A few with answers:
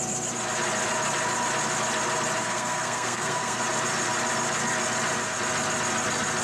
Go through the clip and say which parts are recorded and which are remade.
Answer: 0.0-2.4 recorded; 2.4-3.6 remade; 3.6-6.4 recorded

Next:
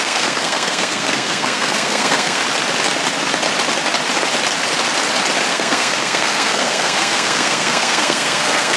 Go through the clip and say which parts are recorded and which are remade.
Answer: 0.0-2.4 remade; 2.4-5.5 recorded; 5.5-8.8 remade

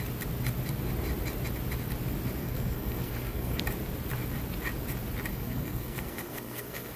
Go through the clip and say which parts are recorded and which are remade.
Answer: 0.0-2.4 recorded; 2.4-3.6 remade; 3.6-5.3 recorded; 5.3-7.0 remade